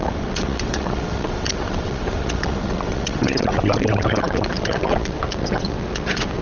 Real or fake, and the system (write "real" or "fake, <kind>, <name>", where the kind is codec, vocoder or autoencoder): fake, vocoder, WaveNeXt